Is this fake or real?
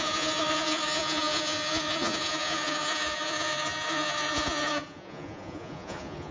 fake